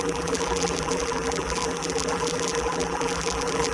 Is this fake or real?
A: fake